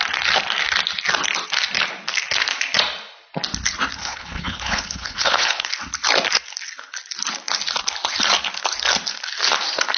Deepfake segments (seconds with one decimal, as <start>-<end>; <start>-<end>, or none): 4.0-5.7